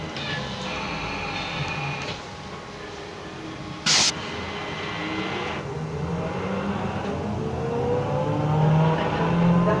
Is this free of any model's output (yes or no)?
yes